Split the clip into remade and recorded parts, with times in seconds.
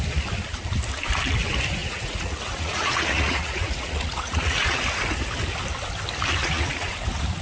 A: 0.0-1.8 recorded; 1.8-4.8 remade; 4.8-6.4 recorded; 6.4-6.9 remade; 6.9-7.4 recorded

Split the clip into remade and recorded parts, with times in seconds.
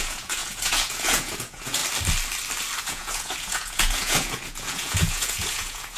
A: 0.0-1.8 remade; 1.8-2.8 recorded; 2.8-6.0 remade